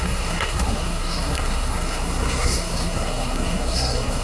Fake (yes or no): yes